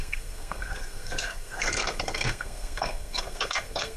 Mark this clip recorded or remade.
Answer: remade